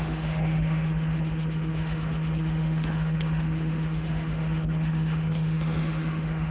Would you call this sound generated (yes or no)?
yes